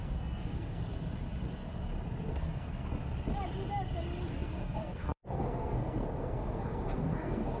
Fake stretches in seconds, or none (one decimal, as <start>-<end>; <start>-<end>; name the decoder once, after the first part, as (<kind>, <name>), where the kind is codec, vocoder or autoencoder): 0.0-0.8 (codec, SNAC); 2.3-2.9; 4.3-7.6